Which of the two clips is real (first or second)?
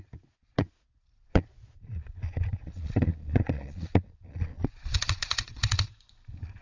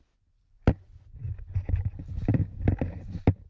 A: second